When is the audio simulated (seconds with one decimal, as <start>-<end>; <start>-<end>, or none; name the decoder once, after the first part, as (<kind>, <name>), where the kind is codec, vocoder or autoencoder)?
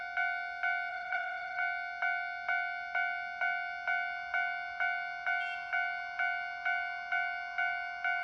0.9-1.6 (vocoder, WaveNeXt)